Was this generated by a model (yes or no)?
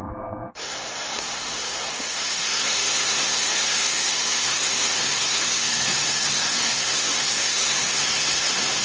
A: yes